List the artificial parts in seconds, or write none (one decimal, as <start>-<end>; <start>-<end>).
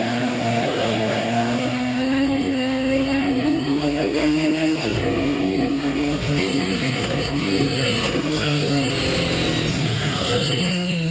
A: 0.0-8.9; 9.7-11.1